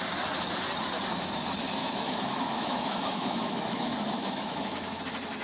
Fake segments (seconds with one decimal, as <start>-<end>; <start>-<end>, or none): 1.8-5.0